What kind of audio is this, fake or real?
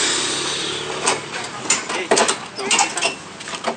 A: real